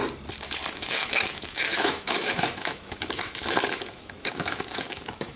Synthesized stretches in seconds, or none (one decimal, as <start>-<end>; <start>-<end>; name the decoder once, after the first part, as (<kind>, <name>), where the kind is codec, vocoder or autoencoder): 0.7-5.4 (autoencoder, DAC-VAE)